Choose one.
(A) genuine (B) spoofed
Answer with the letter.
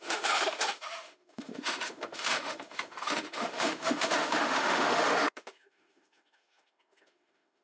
B